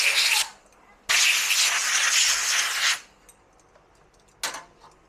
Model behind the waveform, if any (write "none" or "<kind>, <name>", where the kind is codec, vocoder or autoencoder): none